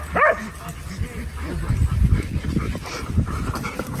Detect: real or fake real